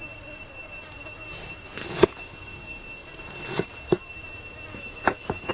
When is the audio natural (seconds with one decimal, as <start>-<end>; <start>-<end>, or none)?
0.0-1.8; 2.3-4.7